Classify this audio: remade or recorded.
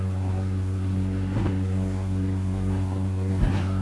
remade